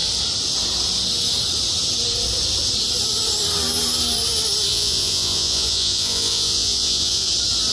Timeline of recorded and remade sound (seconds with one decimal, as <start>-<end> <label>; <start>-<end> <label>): 0.0-4.7 recorded; 4.7-7.3 remade; 7.3-7.7 recorded